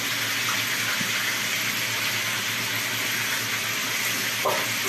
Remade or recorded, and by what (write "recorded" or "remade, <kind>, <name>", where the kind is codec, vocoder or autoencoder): recorded